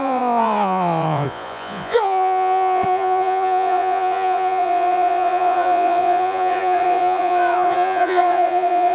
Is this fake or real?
fake